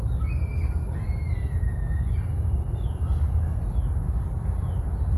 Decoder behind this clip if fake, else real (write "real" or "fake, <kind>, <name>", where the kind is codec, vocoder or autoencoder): real